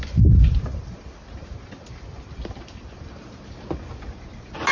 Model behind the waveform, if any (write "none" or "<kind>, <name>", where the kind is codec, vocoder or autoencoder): none